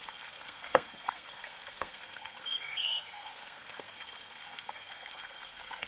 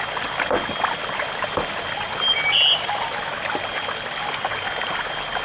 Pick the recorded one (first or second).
second